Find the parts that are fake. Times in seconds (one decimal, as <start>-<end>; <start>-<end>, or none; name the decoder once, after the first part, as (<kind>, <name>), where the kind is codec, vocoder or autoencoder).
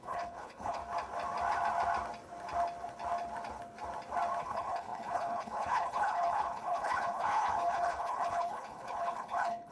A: 0.0-0.8 (codec, HILCodec); 4.4-9.7